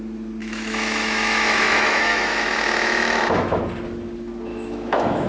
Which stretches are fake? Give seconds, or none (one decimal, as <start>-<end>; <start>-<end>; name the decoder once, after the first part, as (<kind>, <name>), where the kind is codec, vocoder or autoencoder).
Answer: 0.4-3.6 (autoencoder, DAC-VAE); 4.5-5.3